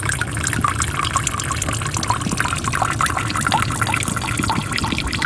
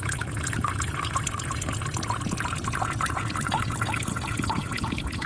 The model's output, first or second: second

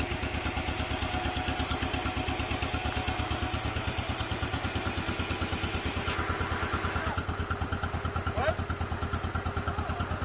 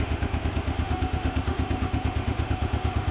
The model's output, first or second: second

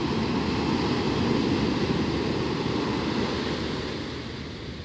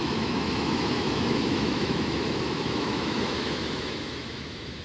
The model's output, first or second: second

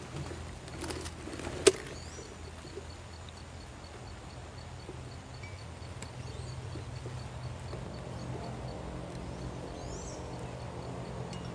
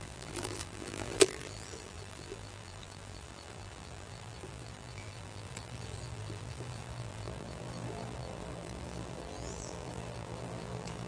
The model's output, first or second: second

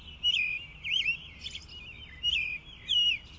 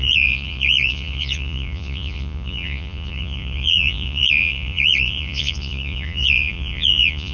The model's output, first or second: second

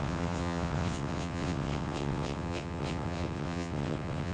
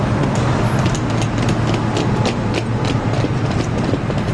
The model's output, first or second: first